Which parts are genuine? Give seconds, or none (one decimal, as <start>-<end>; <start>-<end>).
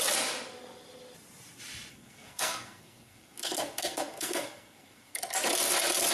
0.0-1.9; 5.2-6.1